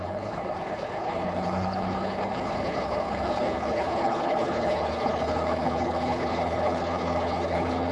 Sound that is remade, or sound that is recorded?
remade